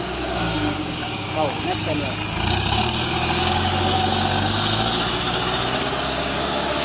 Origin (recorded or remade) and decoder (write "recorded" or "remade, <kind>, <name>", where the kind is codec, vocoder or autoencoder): remade, codec, DAC